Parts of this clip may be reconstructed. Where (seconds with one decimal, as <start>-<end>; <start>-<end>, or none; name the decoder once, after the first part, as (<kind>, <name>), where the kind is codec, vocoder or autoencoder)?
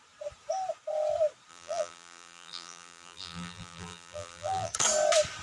1.5-4.7 (vocoder, BigVGAN v2)